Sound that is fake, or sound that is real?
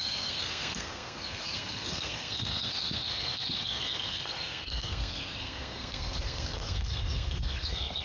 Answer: fake